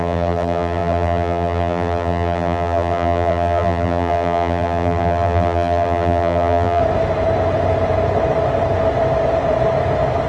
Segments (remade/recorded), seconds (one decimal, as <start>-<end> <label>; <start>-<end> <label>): 0.0-6.8 remade; 6.8-10.3 recorded